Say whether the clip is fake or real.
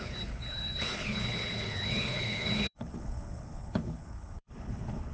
fake